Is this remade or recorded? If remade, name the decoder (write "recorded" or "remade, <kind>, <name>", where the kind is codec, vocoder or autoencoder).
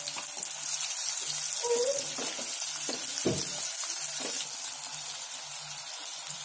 recorded